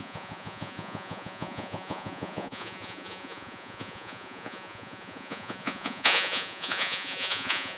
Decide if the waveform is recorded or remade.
remade